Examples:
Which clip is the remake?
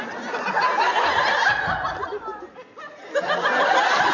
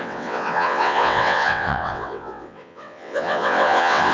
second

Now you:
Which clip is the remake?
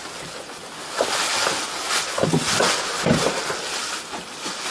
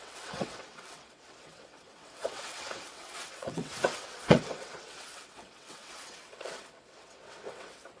second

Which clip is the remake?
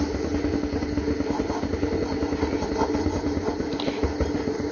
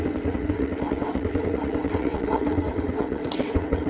second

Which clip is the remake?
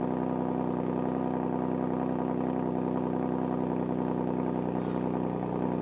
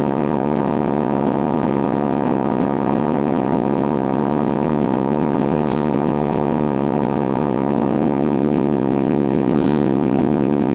second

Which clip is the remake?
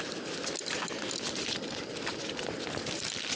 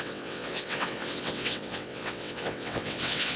second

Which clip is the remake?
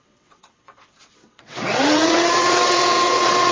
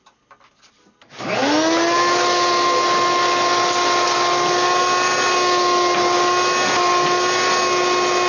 first